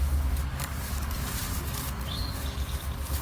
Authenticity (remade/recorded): remade